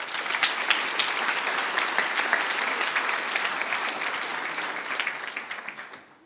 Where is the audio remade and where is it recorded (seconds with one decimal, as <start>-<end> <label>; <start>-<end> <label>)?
0.0-2.3 recorded; 2.3-3.6 remade; 3.6-6.3 recorded